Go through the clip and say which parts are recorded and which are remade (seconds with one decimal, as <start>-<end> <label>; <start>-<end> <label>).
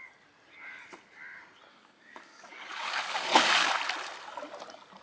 0.0-1.7 recorded; 1.7-3.7 remade; 3.7-5.0 recorded